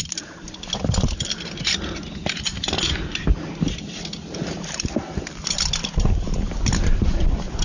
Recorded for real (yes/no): yes